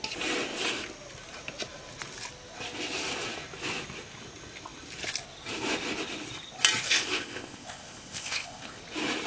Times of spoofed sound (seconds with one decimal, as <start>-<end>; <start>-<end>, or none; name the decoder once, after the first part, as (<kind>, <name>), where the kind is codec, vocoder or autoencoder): 6.8-8.8 (codec, ZipCodec)